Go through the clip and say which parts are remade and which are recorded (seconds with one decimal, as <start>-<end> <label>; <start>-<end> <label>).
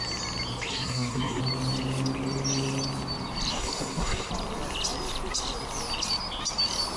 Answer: 0.0-0.7 recorded; 0.7-1.4 remade; 1.4-3.5 recorded; 3.5-4.3 remade; 4.3-7.0 recorded